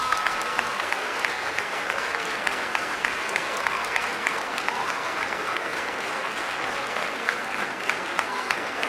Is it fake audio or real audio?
fake